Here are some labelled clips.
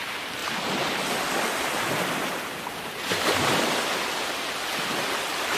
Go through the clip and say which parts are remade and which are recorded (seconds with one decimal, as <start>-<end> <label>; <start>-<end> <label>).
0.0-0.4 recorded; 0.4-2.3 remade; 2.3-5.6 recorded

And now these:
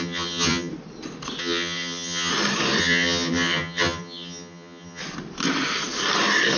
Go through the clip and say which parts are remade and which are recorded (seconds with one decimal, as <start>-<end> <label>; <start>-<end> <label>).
0.0-0.7 remade; 0.7-1.4 recorded; 1.4-2.3 remade; 2.3-2.8 recorded; 2.8-5.0 remade; 5.0-6.6 recorded

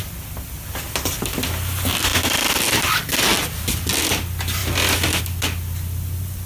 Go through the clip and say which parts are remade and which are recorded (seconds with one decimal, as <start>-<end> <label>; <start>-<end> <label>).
0.0-6.5 recorded

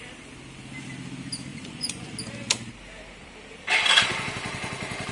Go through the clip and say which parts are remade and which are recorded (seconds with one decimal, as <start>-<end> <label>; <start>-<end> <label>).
0.0-1.5 recorded; 1.5-2.1 remade; 2.1-5.1 recorded

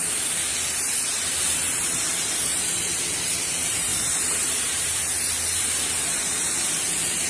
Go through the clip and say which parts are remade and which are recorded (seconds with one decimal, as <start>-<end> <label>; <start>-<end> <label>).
0.0-7.3 remade

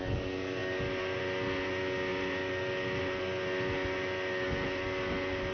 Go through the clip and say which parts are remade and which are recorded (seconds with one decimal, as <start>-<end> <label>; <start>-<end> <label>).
0.0-5.5 recorded

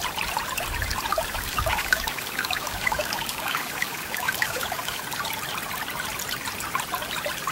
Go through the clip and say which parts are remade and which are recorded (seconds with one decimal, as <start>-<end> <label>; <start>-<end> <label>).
0.0-1.1 recorded; 1.1-5.0 remade; 5.0-7.5 recorded